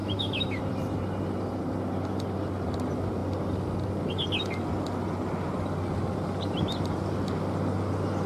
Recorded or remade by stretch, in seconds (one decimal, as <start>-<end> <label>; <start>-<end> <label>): 0.0-0.6 remade; 0.6-8.3 recorded